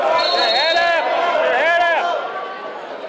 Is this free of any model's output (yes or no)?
yes